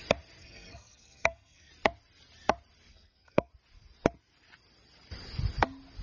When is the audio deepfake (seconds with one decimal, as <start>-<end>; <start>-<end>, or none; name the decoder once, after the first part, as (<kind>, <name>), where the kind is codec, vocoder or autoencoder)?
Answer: 0.4-1.7 (codec, SNAC); 2.9-3.5